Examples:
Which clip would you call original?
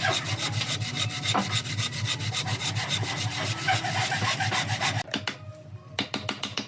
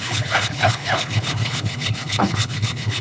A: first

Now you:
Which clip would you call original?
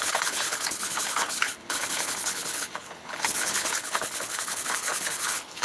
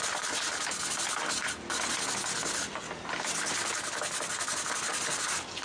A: second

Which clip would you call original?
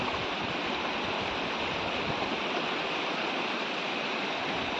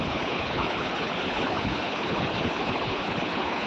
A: first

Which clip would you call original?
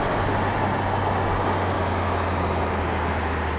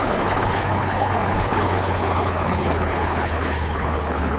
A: first